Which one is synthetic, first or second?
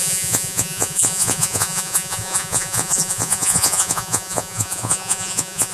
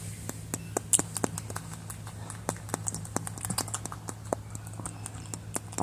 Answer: first